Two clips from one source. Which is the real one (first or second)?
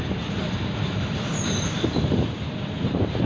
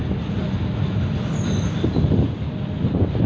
second